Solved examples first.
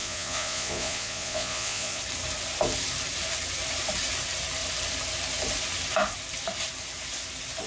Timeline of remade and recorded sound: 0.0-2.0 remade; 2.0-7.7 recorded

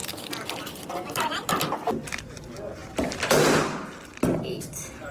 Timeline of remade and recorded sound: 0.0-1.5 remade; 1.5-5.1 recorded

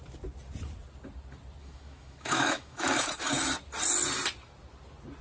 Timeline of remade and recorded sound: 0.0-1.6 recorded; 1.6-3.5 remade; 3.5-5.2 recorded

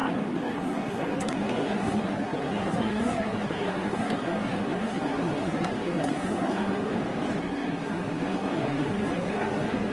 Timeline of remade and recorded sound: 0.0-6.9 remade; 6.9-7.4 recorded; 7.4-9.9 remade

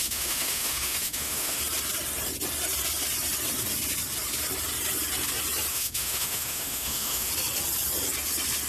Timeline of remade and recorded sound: 0.0-1.6 remade; 1.6-5.7 recorded; 5.7-7.3 remade; 7.3-8.7 recorded

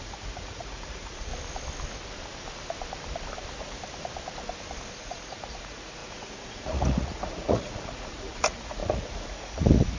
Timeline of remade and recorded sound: 0.0-1.3 remade; 1.3-4.9 recorded; 4.9-10.0 remade